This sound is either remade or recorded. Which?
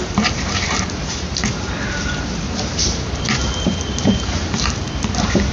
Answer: remade